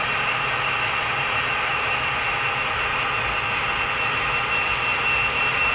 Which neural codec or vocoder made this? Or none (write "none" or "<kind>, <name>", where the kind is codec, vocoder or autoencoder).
none